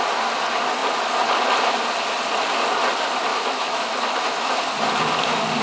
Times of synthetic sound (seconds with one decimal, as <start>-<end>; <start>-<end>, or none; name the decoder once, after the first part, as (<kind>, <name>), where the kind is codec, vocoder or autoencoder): 3.3-4.5 (autoencoder, DAC-VAE)